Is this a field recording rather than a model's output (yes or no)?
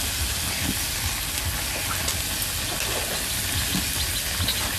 yes